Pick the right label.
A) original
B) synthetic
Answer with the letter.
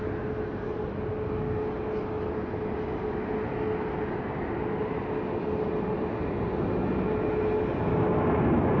A